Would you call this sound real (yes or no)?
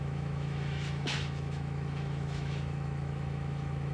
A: no